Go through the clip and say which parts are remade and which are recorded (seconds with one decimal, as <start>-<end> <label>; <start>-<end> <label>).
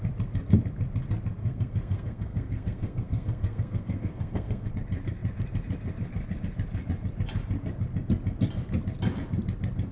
0.0-1.4 recorded; 1.4-4.7 remade; 4.7-9.9 recorded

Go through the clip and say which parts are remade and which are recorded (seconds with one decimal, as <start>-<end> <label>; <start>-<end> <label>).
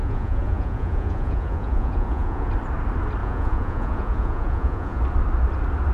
0.0-2.5 remade; 2.5-3.2 recorded; 3.2-5.0 remade; 5.0-5.9 recorded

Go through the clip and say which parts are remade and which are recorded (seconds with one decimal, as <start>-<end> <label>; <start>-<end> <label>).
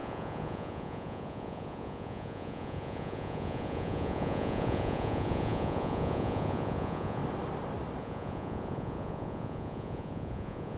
0.0-7.2 remade; 7.2-8.0 recorded; 8.0-10.8 remade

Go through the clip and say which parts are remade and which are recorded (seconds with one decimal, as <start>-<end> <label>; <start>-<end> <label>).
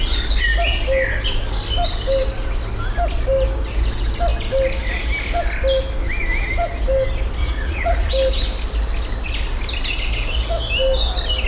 0.0-7.4 recorded; 7.4-8.1 remade; 8.1-11.5 recorded